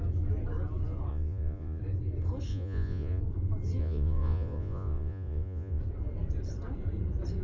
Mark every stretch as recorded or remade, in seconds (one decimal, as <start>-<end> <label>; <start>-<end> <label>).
0.0-1.1 recorded; 1.1-1.8 remade; 1.8-2.5 recorded; 2.5-3.2 remade; 3.2-3.8 recorded; 3.8-5.8 remade; 5.8-7.4 recorded